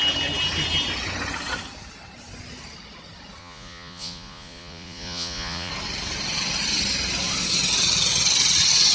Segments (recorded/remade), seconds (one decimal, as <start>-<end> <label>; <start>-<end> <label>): 0.0-3.4 recorded; 3.4-5.7 remade; 5.7-8.9 recorded